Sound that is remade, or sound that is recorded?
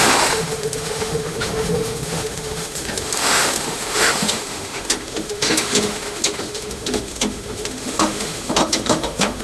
remade